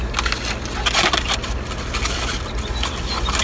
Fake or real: real